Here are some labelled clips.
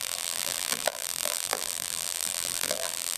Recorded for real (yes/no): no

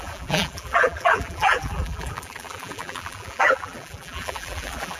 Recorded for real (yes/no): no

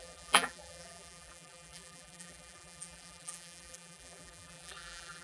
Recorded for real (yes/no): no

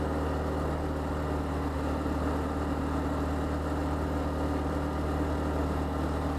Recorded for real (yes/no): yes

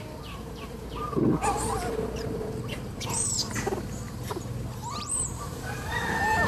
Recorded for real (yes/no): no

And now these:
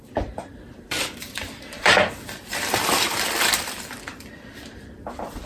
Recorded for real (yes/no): no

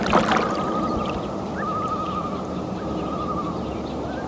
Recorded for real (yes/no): no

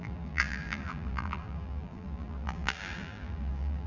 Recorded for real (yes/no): no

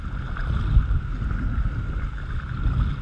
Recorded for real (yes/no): yes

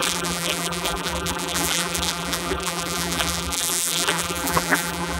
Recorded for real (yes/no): no